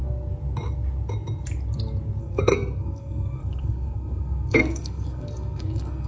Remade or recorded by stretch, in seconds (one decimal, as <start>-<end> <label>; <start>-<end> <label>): 0.0-2.2 recorded; 2.2-6.1 remade